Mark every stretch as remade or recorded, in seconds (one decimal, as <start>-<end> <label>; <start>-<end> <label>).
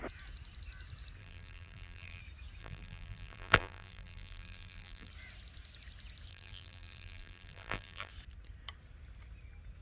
0.0-1.2 recorded; 1.2-2.2 remade; 2.2-2.6 recorded; 2.6-5.1 remade; 5.1-6.3 recorded; 6.3-8.1 remade; 8.1-9.8 recorded